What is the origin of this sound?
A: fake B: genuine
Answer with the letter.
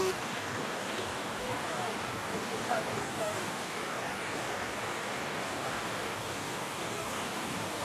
A